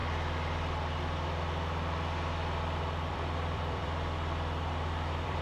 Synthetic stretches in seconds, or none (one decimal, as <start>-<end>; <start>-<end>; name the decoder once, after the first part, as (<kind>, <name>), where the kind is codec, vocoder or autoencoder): 3.1-5.4 (vocoder, BigVGAN v2)